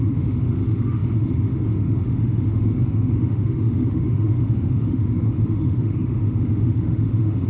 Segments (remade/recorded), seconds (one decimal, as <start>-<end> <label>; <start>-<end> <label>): 0.0-7.5 remade